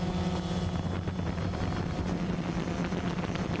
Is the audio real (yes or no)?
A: yes